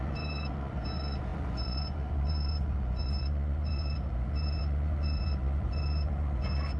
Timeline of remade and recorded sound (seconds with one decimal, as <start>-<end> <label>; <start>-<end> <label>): 0.0-6.8 remade